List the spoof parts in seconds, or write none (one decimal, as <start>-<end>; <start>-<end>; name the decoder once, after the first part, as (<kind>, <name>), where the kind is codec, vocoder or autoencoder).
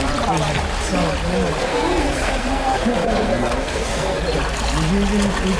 1.6-4.2 (codec, SNAC)